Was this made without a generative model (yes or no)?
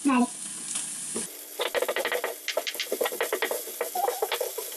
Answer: yes